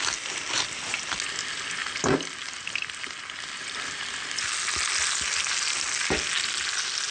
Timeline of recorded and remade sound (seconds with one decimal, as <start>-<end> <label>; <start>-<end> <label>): 0.0-7.1 recorded